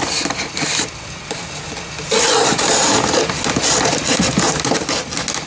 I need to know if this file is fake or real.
real